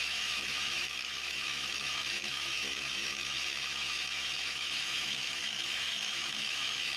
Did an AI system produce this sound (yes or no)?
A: yes